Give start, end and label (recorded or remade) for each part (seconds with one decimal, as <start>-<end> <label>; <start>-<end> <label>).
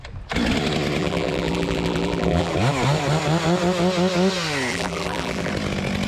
0.0-1.0 recorded; 1.0-2.5 remade; 2.5-4.7 recorded; 4.7-5.5 remade; 5.5-6.1 recorded